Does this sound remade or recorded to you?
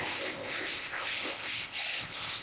remade